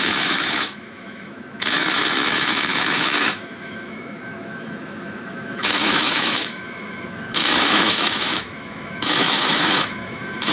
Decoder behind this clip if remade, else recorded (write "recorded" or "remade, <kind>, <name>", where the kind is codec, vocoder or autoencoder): remade, autoencoder, DAC-VAE